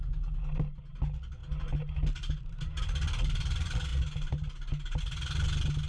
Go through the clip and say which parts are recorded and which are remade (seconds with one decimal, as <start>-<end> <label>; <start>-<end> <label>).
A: 0.0-5.9 recorded

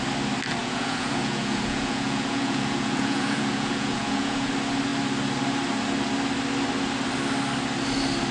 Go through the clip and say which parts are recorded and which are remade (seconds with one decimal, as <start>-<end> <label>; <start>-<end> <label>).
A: 0.0-0.6 recorded; 0.6-4.5 remade; 4.5-8.3 recorded

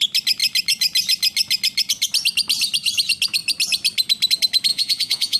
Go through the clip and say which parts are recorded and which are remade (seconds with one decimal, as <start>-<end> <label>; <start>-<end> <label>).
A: 0.0-4.7 recorded; 4.7-5.4 remade